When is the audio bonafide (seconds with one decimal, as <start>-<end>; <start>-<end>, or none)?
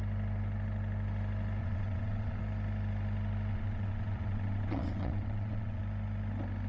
0.0-1.6; 2.4-3.5; 5.8-6.7